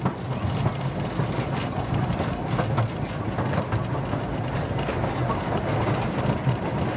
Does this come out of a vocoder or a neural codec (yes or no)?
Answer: no